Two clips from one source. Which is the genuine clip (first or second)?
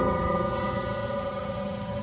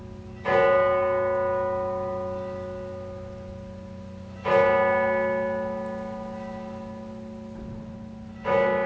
second